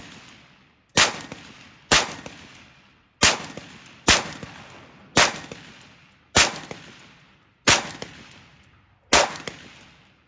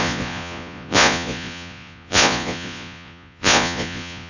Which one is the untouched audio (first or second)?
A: first